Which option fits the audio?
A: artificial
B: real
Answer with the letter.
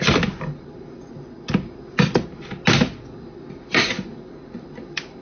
B